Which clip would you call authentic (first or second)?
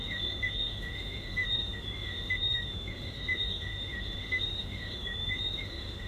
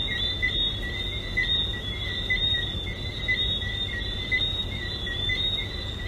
second